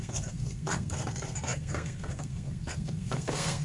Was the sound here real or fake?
fake